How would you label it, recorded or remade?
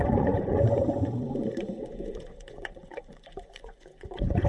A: remade